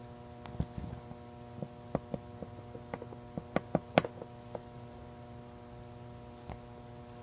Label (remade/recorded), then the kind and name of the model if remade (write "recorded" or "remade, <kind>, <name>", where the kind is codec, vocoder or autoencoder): recorded